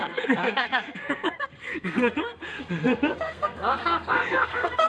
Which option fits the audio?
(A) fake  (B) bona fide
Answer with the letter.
A